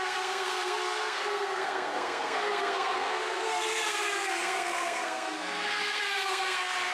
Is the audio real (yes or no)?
no